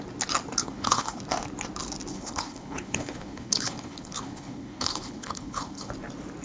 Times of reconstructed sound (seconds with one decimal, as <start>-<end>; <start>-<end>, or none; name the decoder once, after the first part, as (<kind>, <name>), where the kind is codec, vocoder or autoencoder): 0.6-1.2 (codec, HILCodec); 2.1-5.9